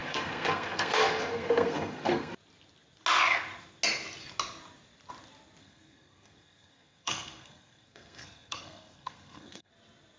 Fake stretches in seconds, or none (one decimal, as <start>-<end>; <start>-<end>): 0.0-2.3; 5.6-9.7